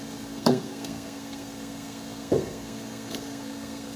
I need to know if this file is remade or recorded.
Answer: remade